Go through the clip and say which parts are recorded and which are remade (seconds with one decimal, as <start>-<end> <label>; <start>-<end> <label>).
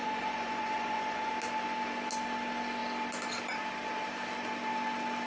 0.0-1.3 remade; 1.3-5.3 recorded